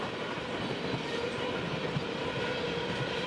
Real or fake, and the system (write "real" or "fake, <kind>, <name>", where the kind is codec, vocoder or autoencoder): real